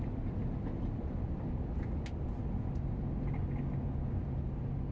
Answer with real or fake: real